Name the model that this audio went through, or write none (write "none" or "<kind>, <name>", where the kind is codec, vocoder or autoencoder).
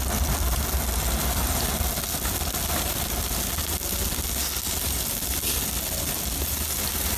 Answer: none